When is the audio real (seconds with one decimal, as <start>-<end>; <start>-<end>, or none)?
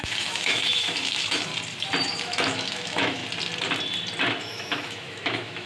1.5-2.1; 3.2-4.4